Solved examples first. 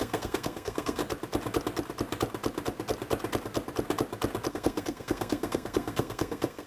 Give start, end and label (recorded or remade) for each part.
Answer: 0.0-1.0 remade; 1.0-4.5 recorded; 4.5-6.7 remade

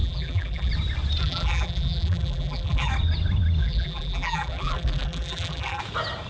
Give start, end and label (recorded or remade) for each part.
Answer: 0.0-0.7 remade; 0.7-1.2 recorded; 1.2-2.9 remade; 2.9-3.6 recorded; 3.6-5.8 remade; 5.8-6.3 recorded

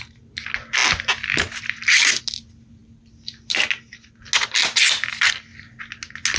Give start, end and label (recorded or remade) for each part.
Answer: 0.0-6.4 recorded

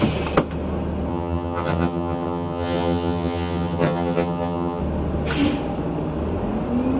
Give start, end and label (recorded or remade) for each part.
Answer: 0.0-1.1 recorded; 1.1-4.8 remade; 4.8-7.0 recorded

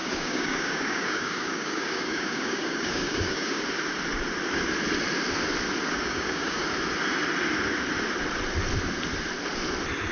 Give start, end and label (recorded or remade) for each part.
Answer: 0.0-3.6 remade; 3.6-5.9 recorded; 5.9-6.6 remade; 6.6-10.1 recorded

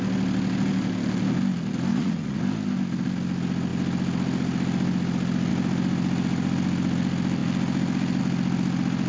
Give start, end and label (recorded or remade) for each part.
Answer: 0.0-1.9 recorded; 1.9-2.4 remade; 2.4-9.1 recorded